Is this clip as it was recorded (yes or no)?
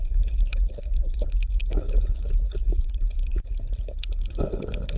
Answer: no